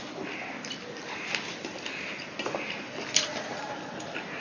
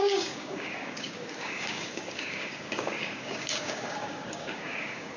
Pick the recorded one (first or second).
first